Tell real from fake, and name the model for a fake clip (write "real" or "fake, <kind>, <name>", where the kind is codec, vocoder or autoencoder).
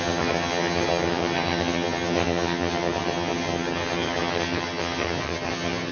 fake, vocoder, HiFi-GAN